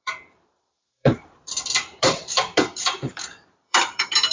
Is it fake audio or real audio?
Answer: fake